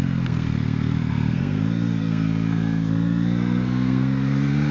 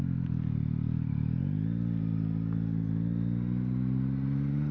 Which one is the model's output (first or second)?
first